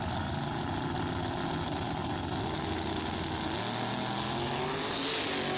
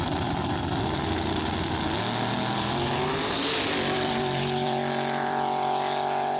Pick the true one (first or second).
first